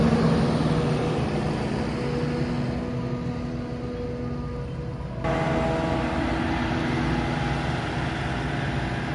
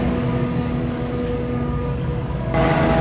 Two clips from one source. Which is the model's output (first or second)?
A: second